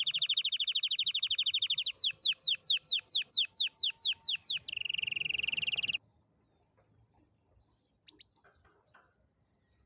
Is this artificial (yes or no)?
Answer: yes